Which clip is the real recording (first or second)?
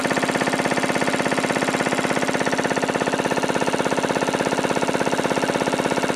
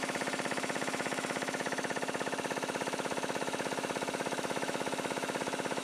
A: first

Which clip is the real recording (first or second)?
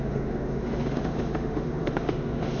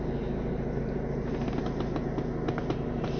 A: second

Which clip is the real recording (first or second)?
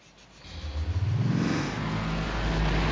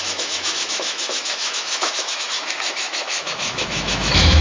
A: first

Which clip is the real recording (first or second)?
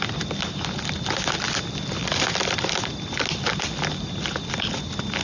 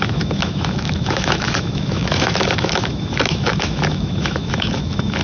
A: first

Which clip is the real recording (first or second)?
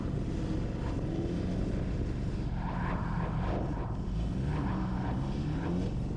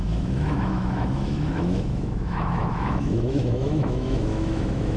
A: first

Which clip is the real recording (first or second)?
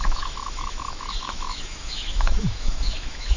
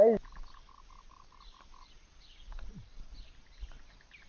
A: second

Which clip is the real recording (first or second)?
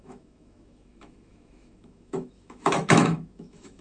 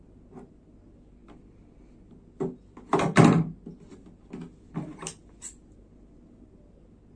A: second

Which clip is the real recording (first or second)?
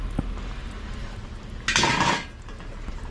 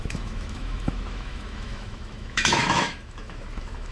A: first